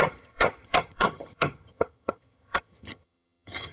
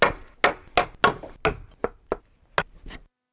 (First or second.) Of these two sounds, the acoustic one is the second